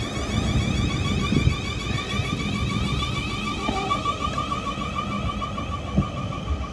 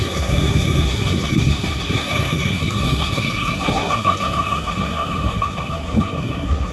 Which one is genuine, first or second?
first